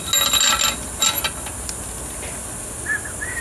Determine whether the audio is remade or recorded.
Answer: recorded